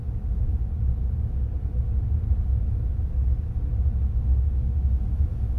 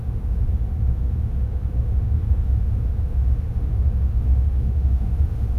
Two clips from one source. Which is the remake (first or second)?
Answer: second